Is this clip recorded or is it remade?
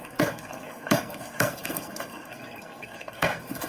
remade